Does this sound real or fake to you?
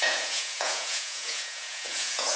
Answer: fake